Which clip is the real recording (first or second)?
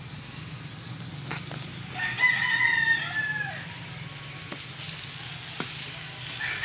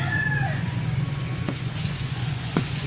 first